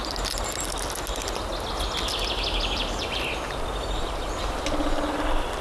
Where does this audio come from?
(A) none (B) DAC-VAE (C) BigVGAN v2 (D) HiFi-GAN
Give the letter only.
A